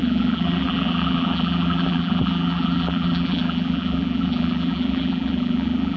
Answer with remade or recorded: remade